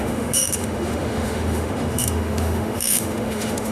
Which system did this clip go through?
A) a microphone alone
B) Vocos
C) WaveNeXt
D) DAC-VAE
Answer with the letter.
D